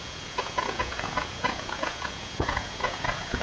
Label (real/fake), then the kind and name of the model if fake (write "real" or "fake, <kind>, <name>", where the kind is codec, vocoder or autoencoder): fake, vocoder, Vocos